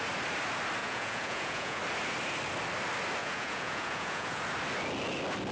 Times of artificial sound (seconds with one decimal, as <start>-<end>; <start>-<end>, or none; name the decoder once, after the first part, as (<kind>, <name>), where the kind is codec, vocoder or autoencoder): 0.8-1.8 (vocoder, Vocos); 3.2-4.4